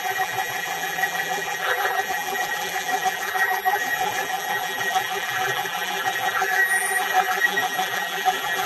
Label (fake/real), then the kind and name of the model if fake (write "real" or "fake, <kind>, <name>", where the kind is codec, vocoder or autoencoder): fake, vocoder, BigVGAN v2